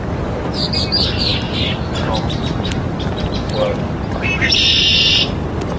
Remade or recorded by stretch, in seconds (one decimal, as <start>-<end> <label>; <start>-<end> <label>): 0.0-5.8 remade